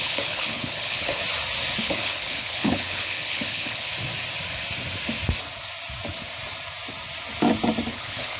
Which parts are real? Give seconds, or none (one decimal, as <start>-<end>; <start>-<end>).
1.2-1.8; 3.9-7.9